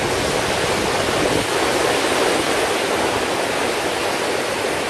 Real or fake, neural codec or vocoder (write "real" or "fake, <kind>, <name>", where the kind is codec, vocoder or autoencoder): real